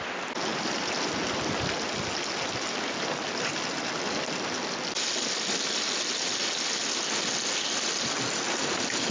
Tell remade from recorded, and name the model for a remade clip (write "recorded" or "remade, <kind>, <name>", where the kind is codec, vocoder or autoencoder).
recorded